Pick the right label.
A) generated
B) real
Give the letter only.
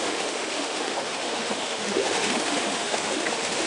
A